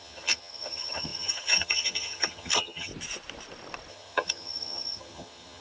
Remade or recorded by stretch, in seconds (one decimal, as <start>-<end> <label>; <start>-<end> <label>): 0.0-2.9 remade; 2.9-3.9 recorded; 3.9-5.6 remade